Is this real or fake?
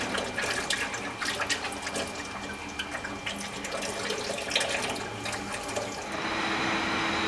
real